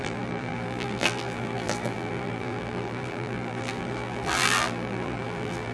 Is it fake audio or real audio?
fake